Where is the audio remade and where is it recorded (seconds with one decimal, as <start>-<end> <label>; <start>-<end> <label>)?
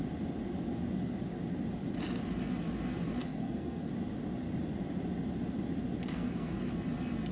0.0-3.2 recorded; 3.2-3.9 remade; 3.9-6.0 recorded; 6.0-6.7 remade; 6.7-7.3 recorded